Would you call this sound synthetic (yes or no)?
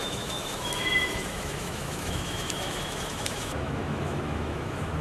yes